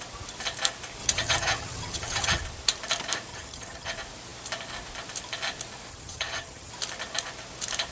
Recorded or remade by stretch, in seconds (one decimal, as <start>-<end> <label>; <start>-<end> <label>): 0.0-1.0 recorded; 1.0-2.4 remade; 2.4-3.3 recorded; 3.3-3.9 remade; 3.9-5.9 recorded; 5.9-6.7 remade; 6.7-7.9 recorded